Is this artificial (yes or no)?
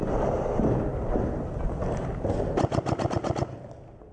no